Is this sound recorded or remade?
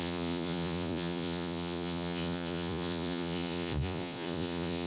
remade